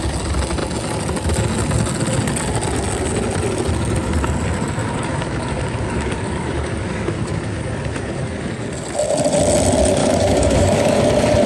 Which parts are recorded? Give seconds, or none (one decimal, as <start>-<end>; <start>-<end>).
0.0-4.8; 8.4-10.0; 10.9-11.5